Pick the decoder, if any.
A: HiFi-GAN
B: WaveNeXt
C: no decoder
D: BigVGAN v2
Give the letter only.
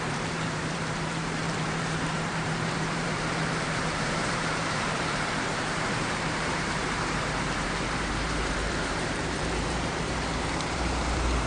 D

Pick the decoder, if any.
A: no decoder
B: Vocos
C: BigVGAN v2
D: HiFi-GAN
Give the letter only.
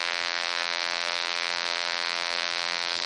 C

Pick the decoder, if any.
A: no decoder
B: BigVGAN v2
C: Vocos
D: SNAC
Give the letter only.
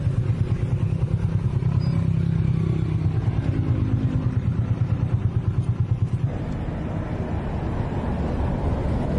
A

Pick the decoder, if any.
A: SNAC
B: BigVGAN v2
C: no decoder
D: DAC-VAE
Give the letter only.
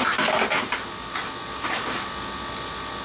C